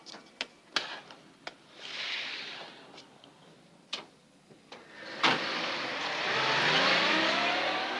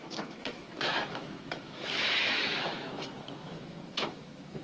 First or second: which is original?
first